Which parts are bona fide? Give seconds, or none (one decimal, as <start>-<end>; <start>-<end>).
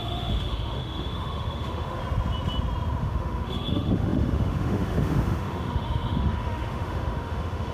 2.0-3.0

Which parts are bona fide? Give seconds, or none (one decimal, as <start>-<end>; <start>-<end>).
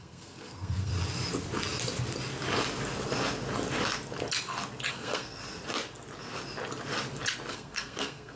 0.9-4.9; 5.4-7.5